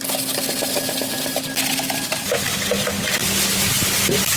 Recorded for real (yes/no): yes